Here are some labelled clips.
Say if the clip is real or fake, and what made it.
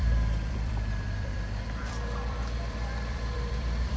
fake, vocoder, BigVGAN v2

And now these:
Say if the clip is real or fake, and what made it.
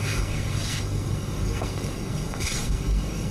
fake, codec, SNAC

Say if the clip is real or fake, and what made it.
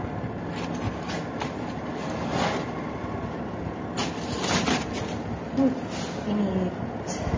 real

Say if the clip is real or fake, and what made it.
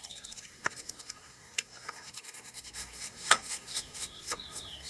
fake, codec, SNAC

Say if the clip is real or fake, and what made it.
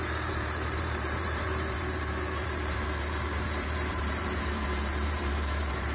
fake, vocoder, BigVGAN v2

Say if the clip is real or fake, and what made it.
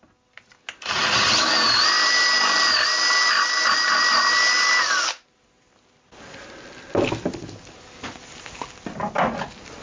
real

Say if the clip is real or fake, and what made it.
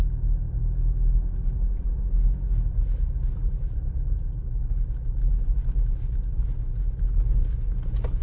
real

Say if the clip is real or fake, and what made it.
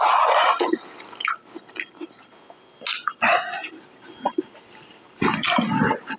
real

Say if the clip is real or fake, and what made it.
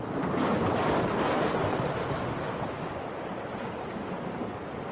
real